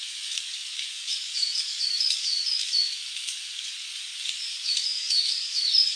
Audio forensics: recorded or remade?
remade